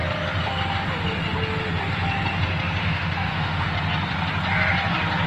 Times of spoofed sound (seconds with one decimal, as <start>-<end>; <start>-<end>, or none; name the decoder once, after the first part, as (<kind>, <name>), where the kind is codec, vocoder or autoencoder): 2.8-3.7 (autoencoder, DAC-VAE)